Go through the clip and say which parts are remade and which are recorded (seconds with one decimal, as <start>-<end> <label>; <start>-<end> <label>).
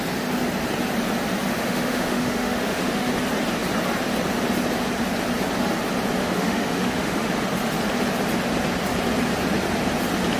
0.0-1.5 recorded; 1.5-3.1 remade; 3.1-6.2 recorded; 6.2-7.3 remade; 7.3-10.4 recorded